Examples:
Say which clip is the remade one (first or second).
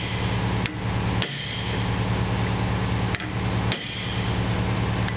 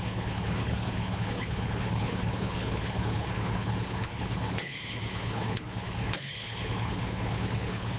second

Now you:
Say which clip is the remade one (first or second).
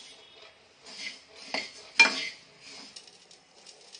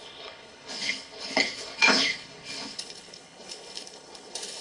second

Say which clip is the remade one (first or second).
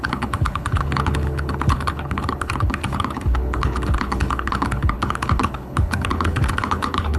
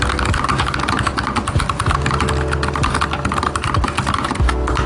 first